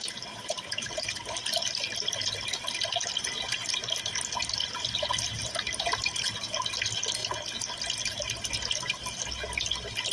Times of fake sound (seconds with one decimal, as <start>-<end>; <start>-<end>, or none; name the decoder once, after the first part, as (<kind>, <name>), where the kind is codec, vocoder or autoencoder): none